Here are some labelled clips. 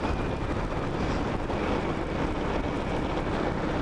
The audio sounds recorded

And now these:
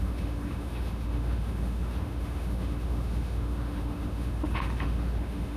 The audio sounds remade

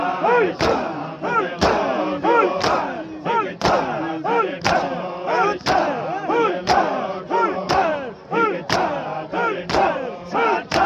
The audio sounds recorded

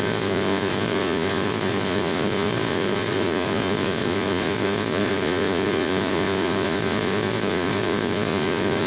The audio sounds remade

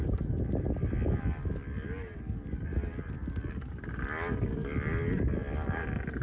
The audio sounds recorded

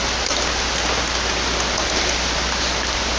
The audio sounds recorded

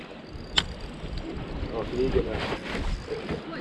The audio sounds recorded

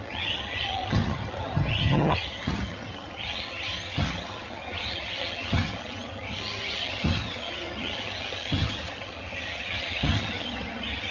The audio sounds remade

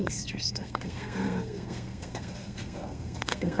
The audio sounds remade